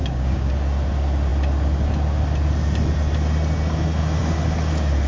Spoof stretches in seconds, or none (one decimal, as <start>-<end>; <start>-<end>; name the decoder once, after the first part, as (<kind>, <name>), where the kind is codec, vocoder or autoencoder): 0.0-0.5 (codec, DAC)